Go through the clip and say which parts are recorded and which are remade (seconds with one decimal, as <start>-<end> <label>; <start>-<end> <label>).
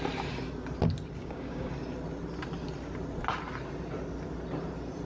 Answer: 0.0-1.2 recorded; 1.2-1.7 remade; 1.7-5.0 recorded